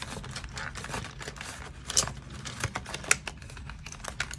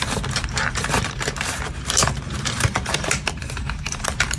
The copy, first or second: second